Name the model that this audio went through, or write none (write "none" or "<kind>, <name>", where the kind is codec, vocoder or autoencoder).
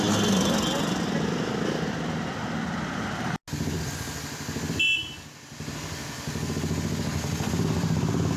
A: none